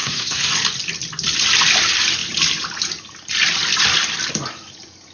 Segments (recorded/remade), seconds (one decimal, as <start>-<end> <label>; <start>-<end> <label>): 0.0-0.5 remade; 0.5-5.1 recorded